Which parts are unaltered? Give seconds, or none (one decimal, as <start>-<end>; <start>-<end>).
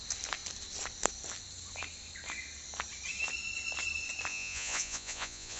0.0-4.3